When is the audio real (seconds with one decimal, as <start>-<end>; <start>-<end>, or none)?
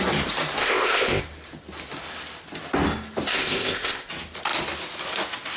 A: 0.0-0.6; 1.2-3.3; 4.1-5.6